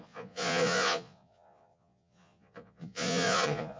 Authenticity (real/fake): fake